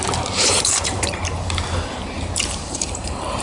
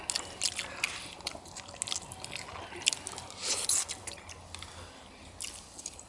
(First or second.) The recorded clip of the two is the second